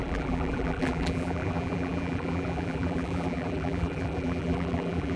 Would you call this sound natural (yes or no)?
no